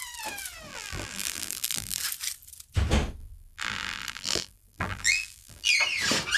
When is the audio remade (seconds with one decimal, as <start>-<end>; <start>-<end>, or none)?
0.7-2.0; 3.2-5.7